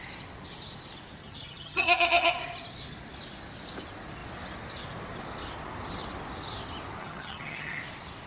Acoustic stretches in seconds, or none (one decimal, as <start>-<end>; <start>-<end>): 0.0-1.2; 2.3-7.0; 7.8-8.3